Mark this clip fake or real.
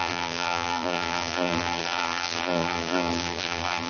fake